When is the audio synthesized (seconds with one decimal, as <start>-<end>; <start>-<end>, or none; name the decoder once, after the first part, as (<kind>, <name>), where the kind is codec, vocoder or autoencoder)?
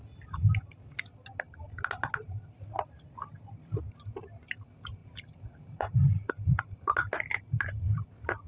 5.0-6.3 (vocoder, BigVGAN v2)